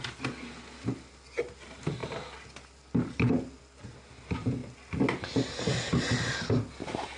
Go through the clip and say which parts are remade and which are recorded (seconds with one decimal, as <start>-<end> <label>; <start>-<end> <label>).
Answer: 0.0-7.2 recorded